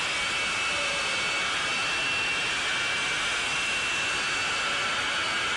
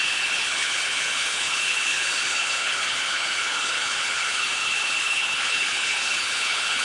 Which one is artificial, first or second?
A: second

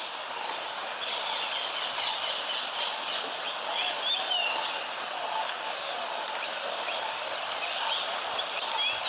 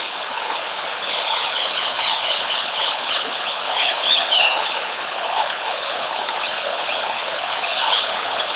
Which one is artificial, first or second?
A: second